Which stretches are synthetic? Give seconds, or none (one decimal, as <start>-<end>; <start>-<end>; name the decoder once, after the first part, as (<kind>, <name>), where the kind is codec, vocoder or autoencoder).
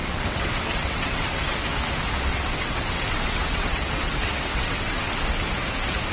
0.0-1.4 (vocoder, WaveNeXt); 2.3-5.1